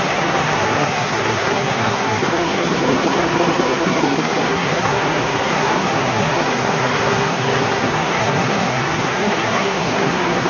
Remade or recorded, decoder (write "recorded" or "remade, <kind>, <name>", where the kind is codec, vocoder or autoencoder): remade, codec, SNAC